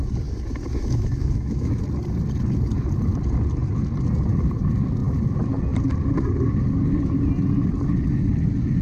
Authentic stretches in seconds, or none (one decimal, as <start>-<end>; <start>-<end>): 0.0-0.8; 1.8-8.8